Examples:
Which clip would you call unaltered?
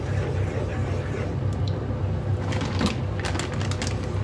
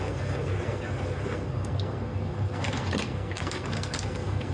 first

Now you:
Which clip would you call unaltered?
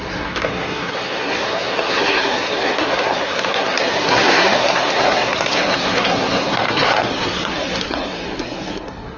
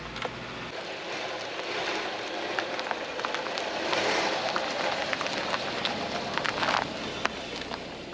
second